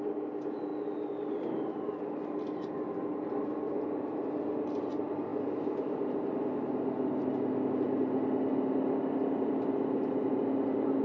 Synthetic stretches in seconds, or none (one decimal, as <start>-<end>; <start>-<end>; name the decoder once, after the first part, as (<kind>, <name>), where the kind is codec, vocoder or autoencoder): none